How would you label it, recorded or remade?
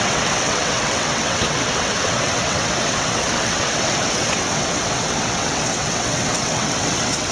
remade